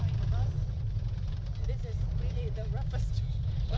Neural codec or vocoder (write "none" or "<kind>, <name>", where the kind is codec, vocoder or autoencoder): none